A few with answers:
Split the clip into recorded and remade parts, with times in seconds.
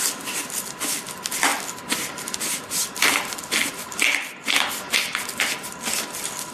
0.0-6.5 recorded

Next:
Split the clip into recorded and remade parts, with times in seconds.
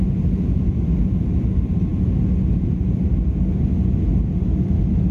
0.0-5.1 recorded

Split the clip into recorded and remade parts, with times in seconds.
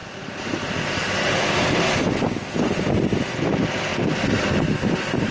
0.0-5.3 recorded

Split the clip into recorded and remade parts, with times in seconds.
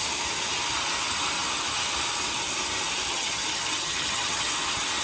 0.0-3.1 recorded; 3.1-4.5 remade; 4.5-5.0 recorded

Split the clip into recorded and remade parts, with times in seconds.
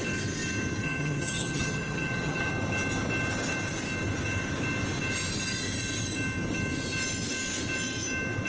0.0-0.8 recorded; 0.8-2.5 remade; 2.5-8.5 recorded